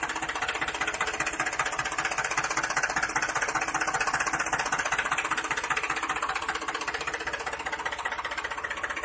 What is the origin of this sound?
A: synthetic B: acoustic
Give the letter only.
A